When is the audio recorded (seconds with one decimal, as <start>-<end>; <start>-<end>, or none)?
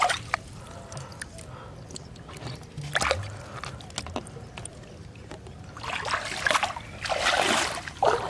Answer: 0.0-8.3